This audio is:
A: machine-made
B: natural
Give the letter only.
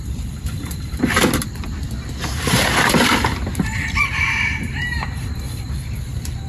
A